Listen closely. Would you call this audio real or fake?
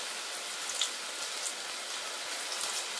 real